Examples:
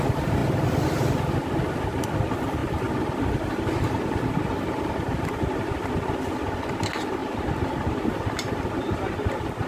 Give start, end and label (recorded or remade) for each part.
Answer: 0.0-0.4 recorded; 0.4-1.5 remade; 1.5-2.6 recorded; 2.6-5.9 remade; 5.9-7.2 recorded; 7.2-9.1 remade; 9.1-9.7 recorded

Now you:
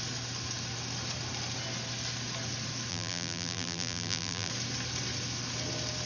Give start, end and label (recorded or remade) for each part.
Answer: 0.0-2.9 recorded; 2.9-4.5 remade; 4.5-6.1 recorded